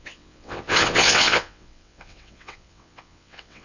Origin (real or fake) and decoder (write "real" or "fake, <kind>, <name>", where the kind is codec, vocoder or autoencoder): fake, vocoder, WaveNeXt